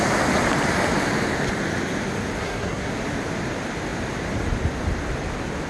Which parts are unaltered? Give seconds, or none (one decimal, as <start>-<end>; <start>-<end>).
0.0-2.4; 2.9-5.7